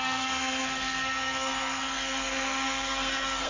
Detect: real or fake fake